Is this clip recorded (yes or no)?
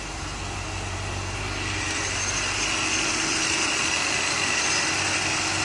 yes